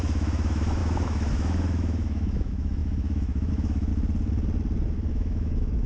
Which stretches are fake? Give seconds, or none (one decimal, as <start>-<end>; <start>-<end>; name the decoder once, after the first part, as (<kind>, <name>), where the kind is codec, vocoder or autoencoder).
0.0-3.9 (autoencoder, DAC-VAE); 5.1-5.9